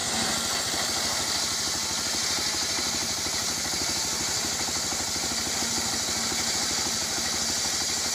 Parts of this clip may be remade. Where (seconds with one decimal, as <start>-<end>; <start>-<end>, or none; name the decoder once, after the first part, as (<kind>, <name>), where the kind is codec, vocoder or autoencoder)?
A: none